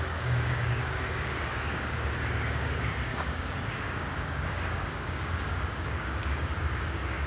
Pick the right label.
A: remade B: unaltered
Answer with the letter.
A